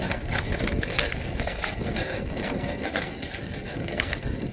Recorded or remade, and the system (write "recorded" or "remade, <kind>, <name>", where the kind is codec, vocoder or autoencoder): remade, codec, SNAC